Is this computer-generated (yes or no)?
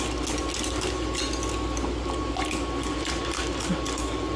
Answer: no